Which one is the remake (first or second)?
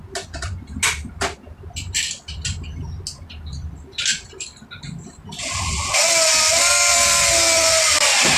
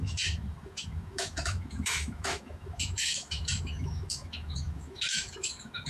second